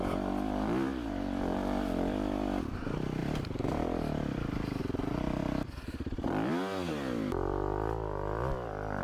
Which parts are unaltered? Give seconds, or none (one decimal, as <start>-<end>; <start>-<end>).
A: 0.0-3.2; 4.8-5.4; 6.5-9.0